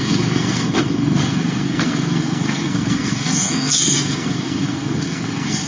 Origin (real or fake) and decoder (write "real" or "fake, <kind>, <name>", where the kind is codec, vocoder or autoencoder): fake, codec, SNAC